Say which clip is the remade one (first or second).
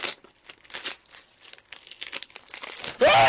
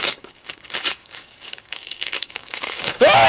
second